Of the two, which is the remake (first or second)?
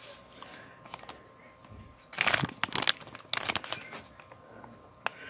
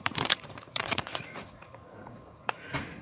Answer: second